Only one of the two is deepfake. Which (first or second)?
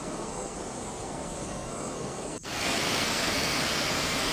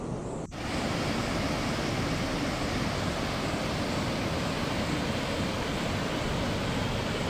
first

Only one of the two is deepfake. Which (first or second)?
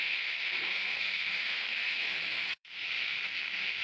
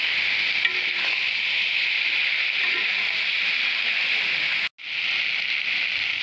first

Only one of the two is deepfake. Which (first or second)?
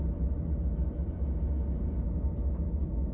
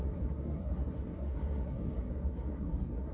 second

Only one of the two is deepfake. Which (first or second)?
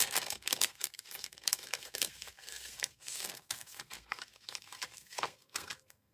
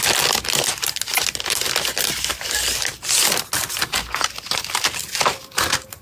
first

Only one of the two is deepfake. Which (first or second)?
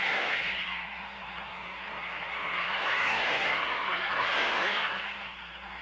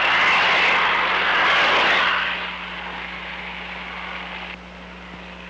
first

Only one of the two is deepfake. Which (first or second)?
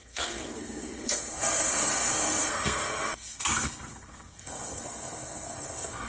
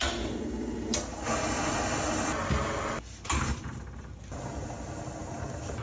first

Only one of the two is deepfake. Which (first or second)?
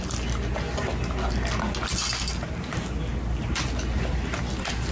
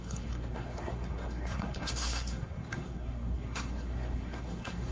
second